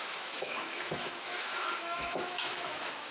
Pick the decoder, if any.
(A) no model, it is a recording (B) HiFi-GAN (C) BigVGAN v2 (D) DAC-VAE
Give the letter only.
D